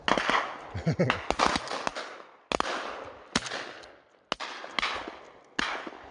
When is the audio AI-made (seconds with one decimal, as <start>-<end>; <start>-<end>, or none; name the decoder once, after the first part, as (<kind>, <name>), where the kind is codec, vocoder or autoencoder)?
none

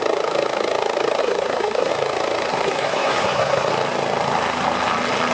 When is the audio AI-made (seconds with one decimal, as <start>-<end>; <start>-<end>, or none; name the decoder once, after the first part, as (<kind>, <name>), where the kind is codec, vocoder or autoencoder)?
1.2-1.9 (codec, SNAC); 2.5-3.7

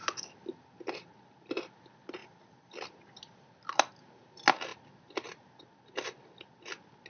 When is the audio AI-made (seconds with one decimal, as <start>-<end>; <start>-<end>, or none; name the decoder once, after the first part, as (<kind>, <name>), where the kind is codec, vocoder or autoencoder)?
2.2-2.9 (vocoder, BigVGAN v2)